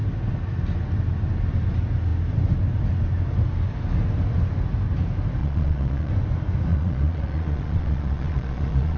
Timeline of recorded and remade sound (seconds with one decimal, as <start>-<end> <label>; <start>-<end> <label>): 0.0-5.4 recorded; 5.4-6.1 remade; 6.1-6.7 recorded; 6.7-9.0 remade